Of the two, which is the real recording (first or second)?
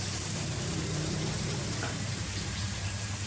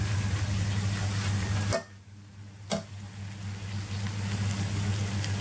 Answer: second